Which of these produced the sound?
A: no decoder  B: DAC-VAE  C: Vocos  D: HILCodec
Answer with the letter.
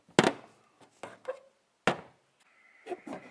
A